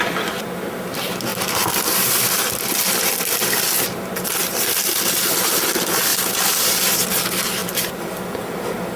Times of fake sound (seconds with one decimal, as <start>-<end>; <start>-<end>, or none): 0.0-6.1; 6.8-9.0